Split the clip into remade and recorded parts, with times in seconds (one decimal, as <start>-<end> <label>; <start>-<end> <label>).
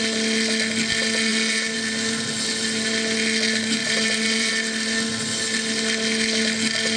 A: 0.0-1.3 recorded; 1.3-1.8 remade; 1.8-3.8 recorded; 3.8-4.5 remade; 4.5-7.0 recorded